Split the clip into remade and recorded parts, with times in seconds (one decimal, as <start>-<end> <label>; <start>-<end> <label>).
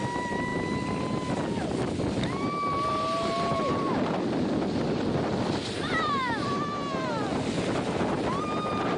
0.0-9.0 recorded